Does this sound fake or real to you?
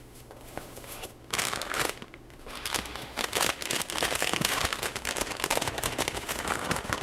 fake